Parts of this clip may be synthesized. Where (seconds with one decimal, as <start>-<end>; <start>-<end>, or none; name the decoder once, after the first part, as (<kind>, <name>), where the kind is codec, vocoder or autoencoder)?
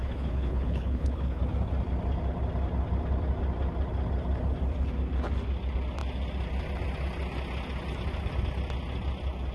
0.0-1.4 (codec, HILCodec)